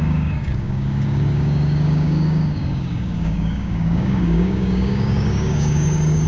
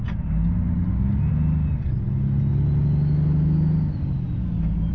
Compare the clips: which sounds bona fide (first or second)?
second